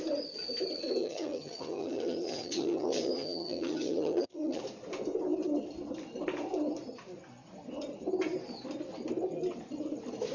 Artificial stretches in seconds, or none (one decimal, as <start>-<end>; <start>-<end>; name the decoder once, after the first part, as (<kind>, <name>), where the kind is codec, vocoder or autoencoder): 1.0-4.6 (vocoder, HiFi-GAN)